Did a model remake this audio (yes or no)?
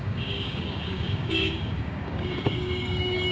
yes